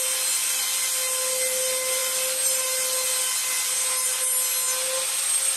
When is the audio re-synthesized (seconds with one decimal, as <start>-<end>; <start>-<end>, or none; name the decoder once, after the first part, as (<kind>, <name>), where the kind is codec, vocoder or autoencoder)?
none